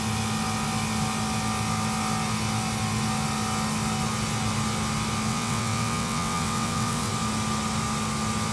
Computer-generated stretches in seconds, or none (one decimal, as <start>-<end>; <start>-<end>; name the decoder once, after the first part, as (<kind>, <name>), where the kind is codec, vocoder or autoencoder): 5.3-7.1 (vocoder, WaveNeXt)